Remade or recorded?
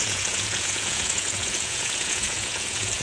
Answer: remade